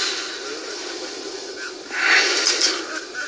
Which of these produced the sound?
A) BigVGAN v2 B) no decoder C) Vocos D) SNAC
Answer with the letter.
B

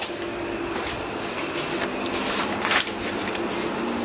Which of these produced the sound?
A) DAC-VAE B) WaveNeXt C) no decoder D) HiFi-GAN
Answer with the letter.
C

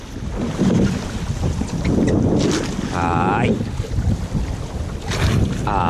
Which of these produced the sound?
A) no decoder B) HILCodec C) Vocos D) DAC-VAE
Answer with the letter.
A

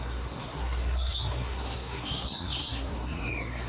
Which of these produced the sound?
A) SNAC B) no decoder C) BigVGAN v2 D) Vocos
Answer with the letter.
A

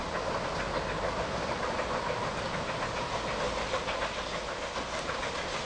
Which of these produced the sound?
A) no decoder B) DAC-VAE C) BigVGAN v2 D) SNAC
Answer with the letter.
A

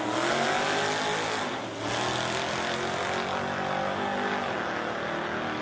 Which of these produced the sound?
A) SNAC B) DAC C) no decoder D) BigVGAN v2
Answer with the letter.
C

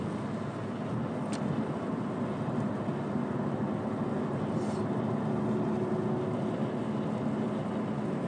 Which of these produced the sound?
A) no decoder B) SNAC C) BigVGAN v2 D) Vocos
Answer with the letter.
A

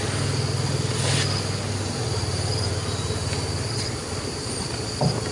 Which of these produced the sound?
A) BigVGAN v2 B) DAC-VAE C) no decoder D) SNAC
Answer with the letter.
C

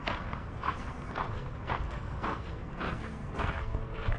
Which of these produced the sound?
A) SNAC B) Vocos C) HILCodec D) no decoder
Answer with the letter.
A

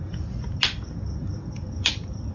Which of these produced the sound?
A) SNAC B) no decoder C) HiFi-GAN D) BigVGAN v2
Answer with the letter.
B